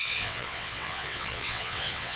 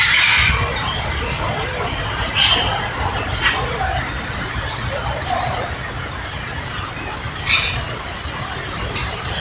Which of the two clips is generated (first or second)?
first